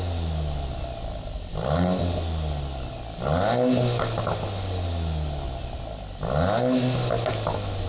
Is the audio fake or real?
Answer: real